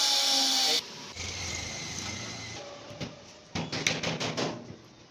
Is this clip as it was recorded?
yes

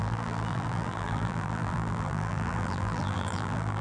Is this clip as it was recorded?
no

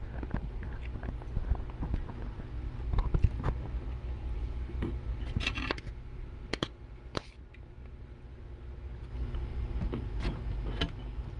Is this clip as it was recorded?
yes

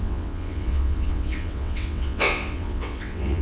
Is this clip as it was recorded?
no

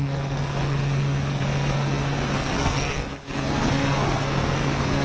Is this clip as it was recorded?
no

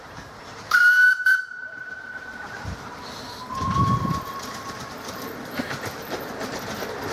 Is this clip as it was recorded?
no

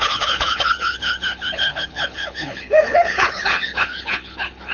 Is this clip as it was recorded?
no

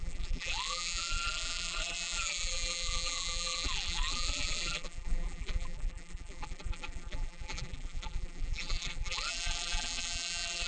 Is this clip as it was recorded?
no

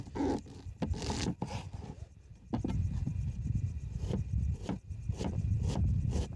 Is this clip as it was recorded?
yes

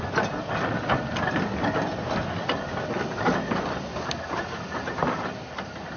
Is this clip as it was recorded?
yes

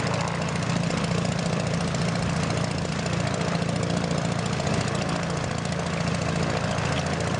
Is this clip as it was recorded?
yes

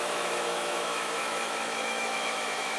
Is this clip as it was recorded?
no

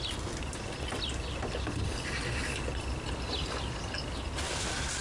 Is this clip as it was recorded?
yes